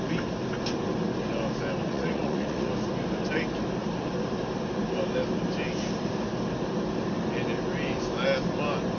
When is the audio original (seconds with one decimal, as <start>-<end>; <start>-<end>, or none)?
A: 0.0-1.8; 2.7-9.0